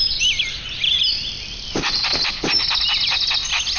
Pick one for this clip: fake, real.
real